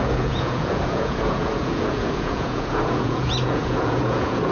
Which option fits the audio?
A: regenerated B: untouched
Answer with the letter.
A